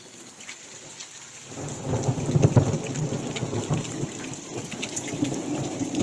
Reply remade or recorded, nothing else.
recorded